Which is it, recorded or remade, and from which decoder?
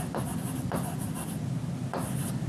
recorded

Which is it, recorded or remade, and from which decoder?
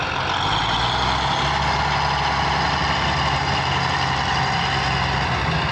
recorded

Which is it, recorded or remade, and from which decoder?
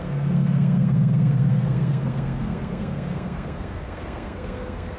remade, codec, SNAC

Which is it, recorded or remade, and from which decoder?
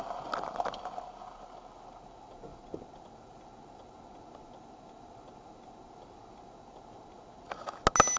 recorded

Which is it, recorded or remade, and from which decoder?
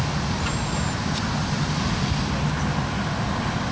recorded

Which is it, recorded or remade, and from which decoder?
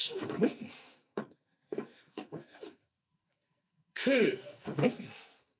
remade, codec, SNAC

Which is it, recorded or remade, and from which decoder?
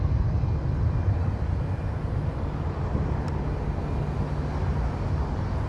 recorded